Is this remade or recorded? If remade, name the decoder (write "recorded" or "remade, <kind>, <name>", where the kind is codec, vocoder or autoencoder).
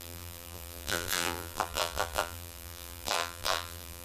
remade, vocoder, BigVGAN v2